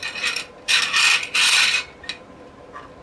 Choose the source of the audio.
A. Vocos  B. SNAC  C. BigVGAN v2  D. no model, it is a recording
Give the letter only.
D